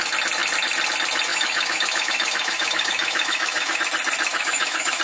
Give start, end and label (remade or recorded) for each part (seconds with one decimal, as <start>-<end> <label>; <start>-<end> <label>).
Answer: 0.0-1.3 recorded; 1.3-3.8 remade; 3.8-4.3 recorded; 4.3-5.0 remade